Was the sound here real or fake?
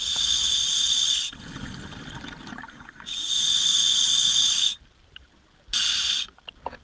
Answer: real